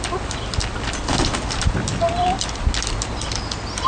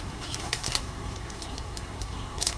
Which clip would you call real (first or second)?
first